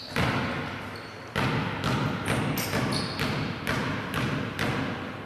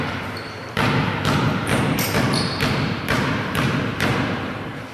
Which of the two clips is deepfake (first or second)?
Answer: second